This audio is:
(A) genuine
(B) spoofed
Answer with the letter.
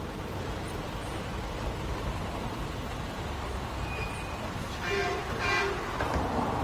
B